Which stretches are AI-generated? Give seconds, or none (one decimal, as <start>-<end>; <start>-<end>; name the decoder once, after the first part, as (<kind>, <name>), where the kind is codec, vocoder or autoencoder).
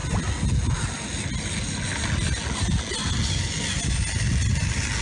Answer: none